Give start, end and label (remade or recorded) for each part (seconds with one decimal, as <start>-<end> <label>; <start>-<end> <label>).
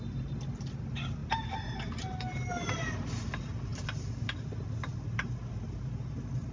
0.0-6.5 recorded